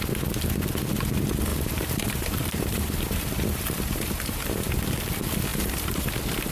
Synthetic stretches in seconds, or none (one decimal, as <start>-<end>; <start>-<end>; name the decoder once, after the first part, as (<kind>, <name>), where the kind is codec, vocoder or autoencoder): 1.5-4.7 (vocoder, BigVGAN v2); 5.5-6.1